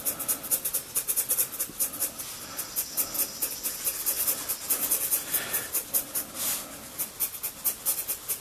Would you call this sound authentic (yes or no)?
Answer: yes